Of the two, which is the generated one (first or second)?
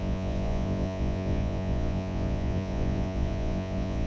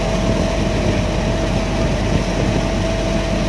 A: first